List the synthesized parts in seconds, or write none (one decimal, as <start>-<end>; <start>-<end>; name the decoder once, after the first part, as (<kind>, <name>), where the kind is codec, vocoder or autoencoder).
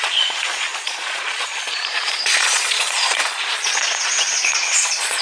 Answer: 0.0-5.2 (vocoder, Vocos)